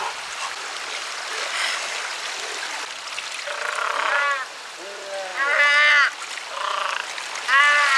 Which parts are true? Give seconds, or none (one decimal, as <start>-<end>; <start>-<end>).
0.0-8.0